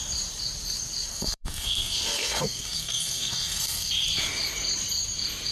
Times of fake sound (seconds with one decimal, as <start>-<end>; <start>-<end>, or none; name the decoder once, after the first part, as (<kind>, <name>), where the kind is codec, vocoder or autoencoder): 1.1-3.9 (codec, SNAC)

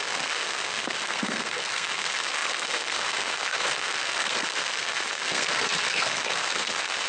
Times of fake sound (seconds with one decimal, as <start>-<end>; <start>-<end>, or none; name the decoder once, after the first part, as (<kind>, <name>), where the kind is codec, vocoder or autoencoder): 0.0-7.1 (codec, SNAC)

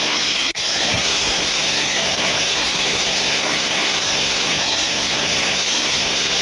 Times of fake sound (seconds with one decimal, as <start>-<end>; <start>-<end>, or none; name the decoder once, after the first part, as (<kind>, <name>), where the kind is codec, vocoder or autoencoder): 0.0-6.4 (codec, SNAC)

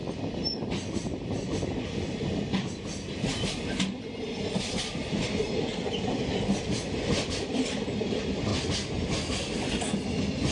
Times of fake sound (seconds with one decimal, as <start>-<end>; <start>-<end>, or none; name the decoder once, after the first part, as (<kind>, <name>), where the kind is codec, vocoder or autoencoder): none

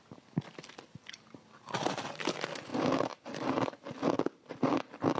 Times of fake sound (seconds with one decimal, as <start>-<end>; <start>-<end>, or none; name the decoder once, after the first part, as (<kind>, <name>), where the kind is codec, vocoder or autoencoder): none

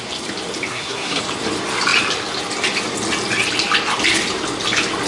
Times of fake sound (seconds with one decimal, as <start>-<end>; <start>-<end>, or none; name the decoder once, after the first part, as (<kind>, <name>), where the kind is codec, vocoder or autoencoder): 0.7-1.2 (codec, SNAC)